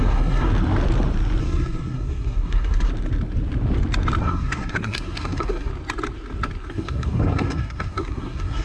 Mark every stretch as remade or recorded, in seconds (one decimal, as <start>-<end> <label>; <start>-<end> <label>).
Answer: 0.0-0.5 remade; 0.5-1.4 recorded; 1.4-2.9 remade; 2.9-4.2 recorded; 4.2-5.7 remade; 5.7-6.7 recorded; 6.7-8.6 remade